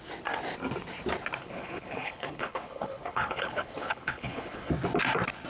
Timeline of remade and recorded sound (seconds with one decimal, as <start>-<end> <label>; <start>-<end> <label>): 0.0-1.4 recorded; 1.4-4.7 remade; 4.7-5.5 recorded